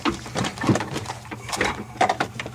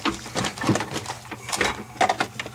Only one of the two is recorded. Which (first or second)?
second